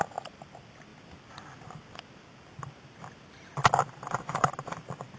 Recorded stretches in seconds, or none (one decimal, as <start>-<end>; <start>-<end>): 0.0-5.2

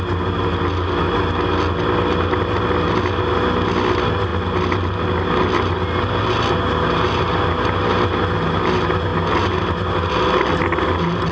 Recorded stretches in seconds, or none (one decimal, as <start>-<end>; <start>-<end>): 0.0-11.3

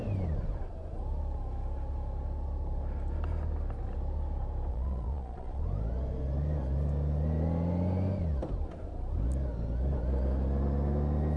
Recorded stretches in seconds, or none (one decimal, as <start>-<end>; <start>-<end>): 0.0-4.7; 5.6-11.4

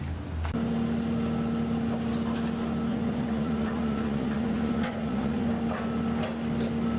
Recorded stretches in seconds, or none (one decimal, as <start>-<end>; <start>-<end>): 0.0-2.9; 5.5-7.0

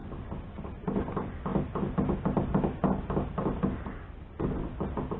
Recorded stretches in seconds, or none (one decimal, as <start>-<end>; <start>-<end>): 0.0-5.2

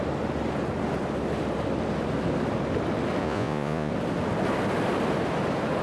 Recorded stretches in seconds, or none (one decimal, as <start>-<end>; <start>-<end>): 0.0-3.2; 3.9-5.8

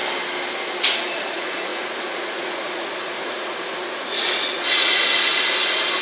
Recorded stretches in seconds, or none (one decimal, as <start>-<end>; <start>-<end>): 0.0-0.8

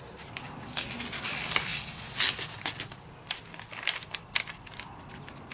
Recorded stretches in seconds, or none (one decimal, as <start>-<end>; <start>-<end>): 0.0-5.5